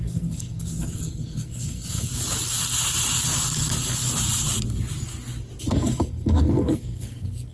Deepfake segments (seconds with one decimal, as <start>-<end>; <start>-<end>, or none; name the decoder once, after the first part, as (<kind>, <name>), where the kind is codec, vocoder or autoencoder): 0.0-2.1 (codec, SNAC); 5.6-7.5